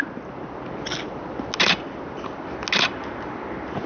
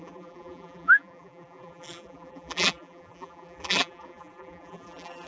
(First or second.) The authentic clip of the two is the first